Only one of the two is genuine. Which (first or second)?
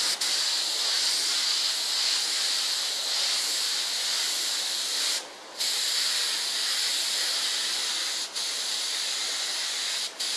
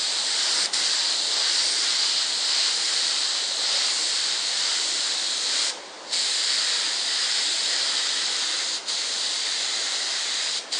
first